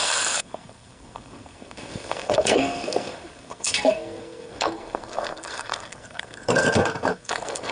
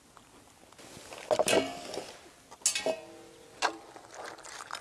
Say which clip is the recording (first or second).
second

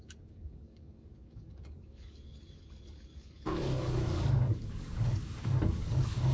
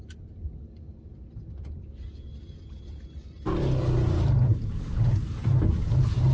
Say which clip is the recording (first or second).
second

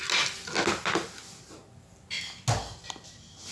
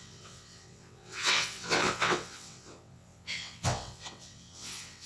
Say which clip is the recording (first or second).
first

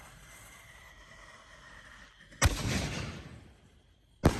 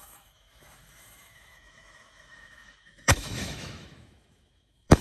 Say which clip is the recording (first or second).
first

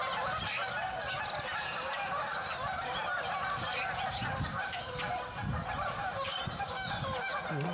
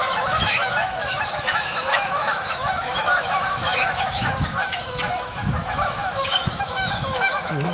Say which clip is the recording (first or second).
first